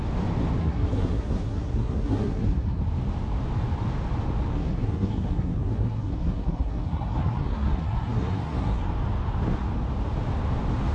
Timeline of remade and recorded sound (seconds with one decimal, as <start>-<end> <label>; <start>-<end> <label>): 0.0-0.6 recorded; 0.6-2.8 remade; 2.8-4.5 recorded; 4.5-8.9 remade; 8.9-10.9 recorded